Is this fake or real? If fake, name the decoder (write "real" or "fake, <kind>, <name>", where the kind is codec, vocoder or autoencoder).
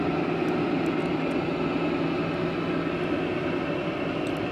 real